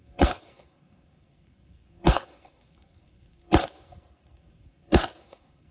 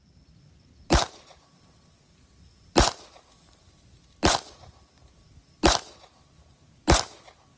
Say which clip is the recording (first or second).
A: second